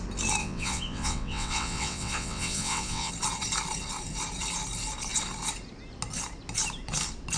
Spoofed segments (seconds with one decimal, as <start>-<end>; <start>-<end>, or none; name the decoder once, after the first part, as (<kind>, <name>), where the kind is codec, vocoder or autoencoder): 0.4-3.1 (vocoder, WaveNeXt)